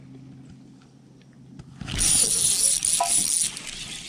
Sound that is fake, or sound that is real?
real